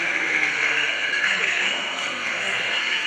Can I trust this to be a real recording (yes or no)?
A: no